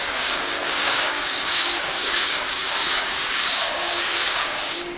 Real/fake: fake